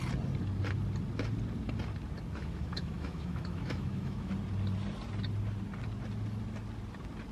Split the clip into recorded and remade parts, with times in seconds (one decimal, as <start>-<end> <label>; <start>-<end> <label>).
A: 0.0-2.4 recorded; 2.4-4.3 remade; 4.3-7.3 recorded